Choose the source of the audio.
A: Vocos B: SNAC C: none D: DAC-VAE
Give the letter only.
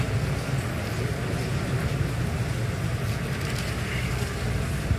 C